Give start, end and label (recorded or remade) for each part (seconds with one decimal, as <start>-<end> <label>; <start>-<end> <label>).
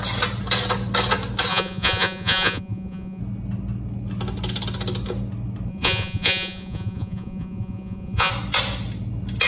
0.0-1.5 recorded; 1.5-3.2 remade; 3.2-5.7 recorded; 5.7-8.3 remade; 8.3-9.5 recorded